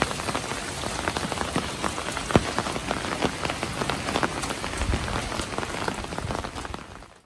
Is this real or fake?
real